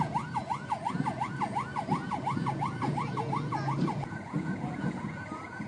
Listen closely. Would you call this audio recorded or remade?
remade